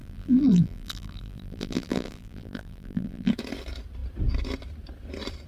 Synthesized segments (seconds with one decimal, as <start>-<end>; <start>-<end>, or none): 0.0-3.3